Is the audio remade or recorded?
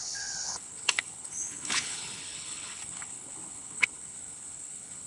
remade